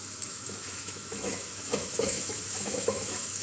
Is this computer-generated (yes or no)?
yes